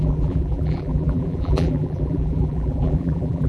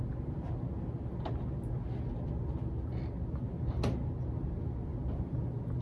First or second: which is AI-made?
first